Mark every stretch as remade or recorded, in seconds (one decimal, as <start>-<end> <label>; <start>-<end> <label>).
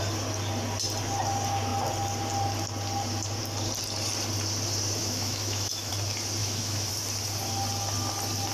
0.0-5.0 recorded; 5.0-5.9 remade; 5.9-6.4 recorded; 6.4-6.9 remade; 6.9-8.5 recorded